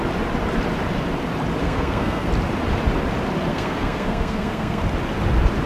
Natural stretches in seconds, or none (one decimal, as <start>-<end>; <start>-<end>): 0.0-1.6; 2.3-3.5; 4.8-5.7